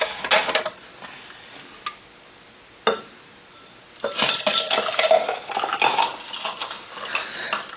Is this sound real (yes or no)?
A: yes